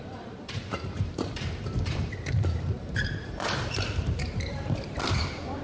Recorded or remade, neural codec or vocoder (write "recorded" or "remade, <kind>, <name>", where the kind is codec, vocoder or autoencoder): remade, vocoder, BigVGAN v2